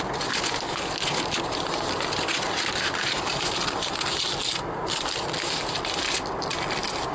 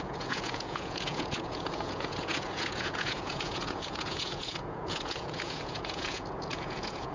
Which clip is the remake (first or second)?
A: second